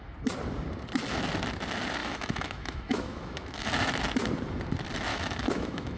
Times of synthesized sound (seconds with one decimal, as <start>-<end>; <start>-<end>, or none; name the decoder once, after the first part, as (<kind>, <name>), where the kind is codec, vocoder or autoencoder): 2.0-3.7 (autoencoder, DAC-VAE); 5.1-6.0